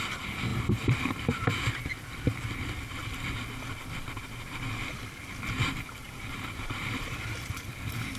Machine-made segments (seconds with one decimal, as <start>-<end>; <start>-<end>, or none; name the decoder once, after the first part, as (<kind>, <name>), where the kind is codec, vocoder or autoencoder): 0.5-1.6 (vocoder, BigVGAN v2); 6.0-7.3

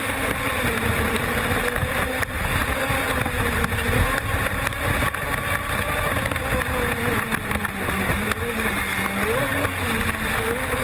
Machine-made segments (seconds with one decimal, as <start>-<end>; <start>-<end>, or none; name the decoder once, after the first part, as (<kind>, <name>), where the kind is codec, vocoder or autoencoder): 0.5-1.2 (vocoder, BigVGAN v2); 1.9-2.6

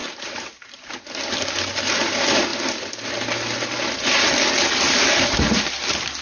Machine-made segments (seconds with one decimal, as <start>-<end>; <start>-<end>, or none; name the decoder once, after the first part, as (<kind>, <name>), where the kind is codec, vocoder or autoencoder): 0.0-0.9 (vocoder, BigVGAN v2)

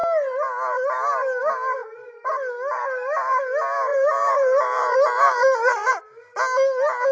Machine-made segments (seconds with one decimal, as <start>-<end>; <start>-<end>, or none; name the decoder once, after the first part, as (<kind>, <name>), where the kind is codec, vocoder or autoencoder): 1.8-2.3 (vocoder, BigVGAN v2); 3.9-5.9

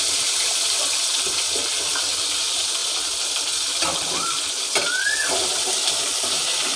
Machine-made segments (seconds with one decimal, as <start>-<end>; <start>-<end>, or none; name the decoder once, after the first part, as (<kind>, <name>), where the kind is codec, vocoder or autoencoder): 0.0-1.6 (vocoder, BigVGAN v2); 2.3-6.8

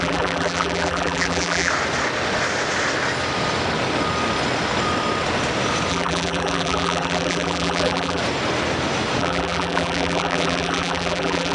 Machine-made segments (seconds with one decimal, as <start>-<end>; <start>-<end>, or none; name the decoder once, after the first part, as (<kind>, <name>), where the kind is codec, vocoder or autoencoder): 0.0-1.7 (vocoder, BigVGAN v2); 5.9-8.2; 9.2-11.5